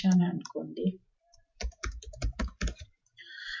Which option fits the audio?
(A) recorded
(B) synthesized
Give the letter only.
B